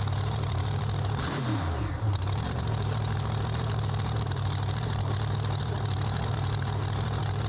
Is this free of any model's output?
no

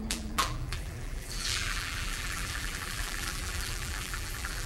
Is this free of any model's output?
no